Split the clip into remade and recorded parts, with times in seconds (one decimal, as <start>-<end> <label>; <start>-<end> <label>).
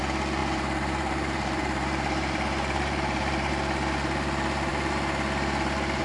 0.0-0.4 recorded; 0.4-3.5 remade; 3.5-6.0 recorded